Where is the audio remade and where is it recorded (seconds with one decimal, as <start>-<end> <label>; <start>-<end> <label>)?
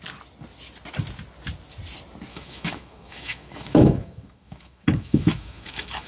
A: 0.0-2.3 recorded; 2.3-6.1 remade